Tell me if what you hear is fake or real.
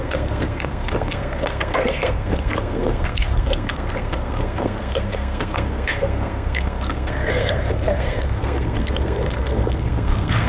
fake